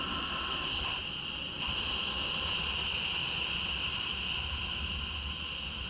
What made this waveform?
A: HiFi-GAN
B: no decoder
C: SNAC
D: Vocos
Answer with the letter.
B